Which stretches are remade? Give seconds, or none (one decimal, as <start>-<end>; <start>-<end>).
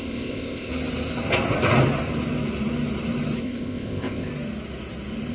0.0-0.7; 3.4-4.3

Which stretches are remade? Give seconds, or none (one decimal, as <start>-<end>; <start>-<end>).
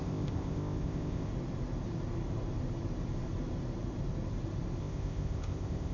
0.0-1.3; 4.8-5.9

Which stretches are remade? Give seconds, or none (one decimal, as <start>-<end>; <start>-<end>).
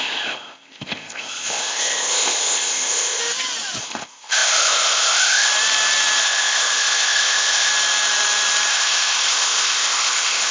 0.0-3.2; 3.8-5.5; 6.2-7.7; 8.7-10.5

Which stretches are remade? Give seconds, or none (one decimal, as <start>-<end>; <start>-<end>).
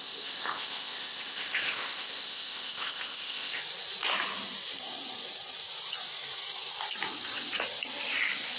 0.0-3.6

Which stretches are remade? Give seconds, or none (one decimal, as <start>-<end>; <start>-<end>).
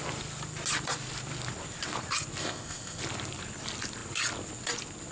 2.4-3.0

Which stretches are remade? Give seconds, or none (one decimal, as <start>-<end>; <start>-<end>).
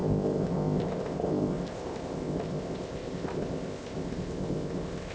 0.0-5.1